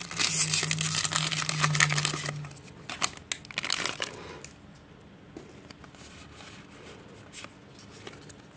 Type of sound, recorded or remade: recorded